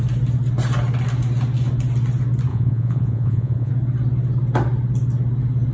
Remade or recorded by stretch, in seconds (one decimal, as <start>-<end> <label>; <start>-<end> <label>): 0.0-2.5 recorded; 2.5-3.7 remade; 3.7-5.7 recorded